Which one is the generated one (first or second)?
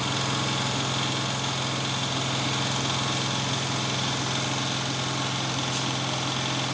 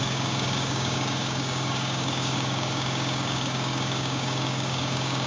second